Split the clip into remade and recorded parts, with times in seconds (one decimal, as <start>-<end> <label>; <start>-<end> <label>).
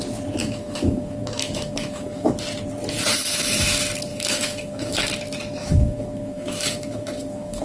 0.0-0.4 recorded; 0.4-2.3 remade; 2.3-4.1 recorded; 4.1-5.1 remade; 5.1-5.6 recorded; 5.6-7.6 remade